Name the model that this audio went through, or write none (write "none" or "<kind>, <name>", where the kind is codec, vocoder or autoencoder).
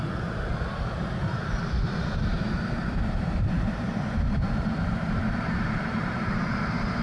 vocoder, BigVGAN v2